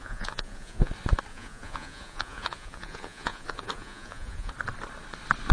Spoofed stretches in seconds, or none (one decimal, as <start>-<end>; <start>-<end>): 0.0-0.9; 1.3-4.5